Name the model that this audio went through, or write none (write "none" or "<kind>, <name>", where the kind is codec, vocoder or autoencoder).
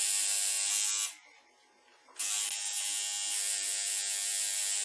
none